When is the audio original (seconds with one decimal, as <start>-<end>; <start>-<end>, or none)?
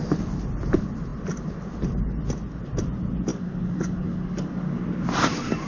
0.0-3.3; 4.8-5.7